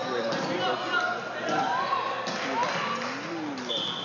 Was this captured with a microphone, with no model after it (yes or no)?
yes